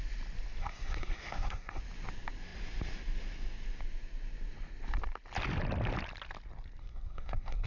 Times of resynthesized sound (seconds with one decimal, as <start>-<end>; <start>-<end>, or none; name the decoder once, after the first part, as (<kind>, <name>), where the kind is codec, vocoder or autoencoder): 0.6-1.8 (codec, SNAC); 6.8-7.7